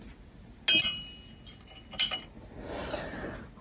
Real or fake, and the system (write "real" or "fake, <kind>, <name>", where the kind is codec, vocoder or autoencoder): real